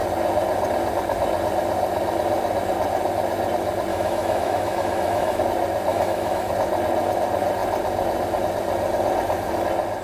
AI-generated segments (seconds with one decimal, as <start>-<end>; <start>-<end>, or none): 3.9-5.4; 5.9-6.5